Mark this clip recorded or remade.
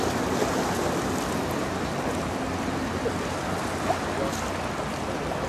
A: recorded